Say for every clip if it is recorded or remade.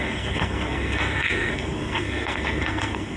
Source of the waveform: remade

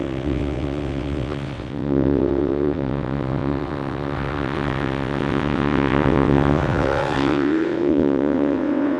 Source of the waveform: remade